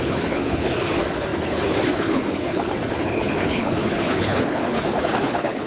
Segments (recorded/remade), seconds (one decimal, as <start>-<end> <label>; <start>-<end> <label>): 0.0-5.7 remade